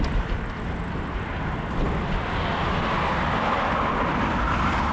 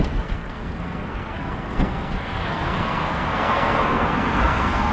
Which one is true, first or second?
first